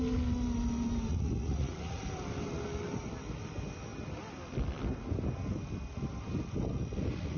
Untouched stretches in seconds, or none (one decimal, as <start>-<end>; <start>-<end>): 0.0-1.1; 2.0-7.4